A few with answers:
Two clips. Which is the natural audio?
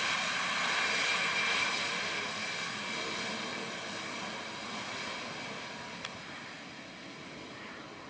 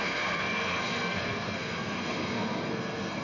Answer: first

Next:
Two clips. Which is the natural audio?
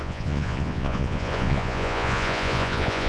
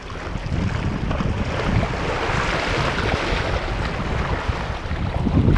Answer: second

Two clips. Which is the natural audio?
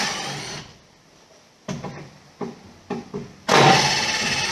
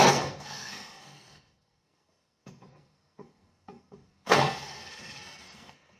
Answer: first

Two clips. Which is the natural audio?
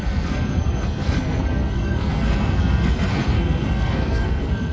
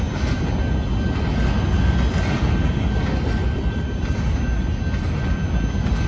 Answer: second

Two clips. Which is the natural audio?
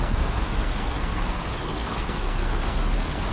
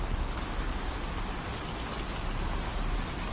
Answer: second